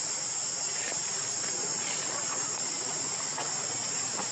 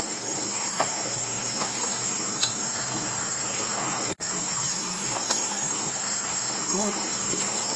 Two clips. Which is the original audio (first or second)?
first